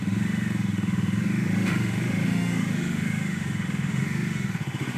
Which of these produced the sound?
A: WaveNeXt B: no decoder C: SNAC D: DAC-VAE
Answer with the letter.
D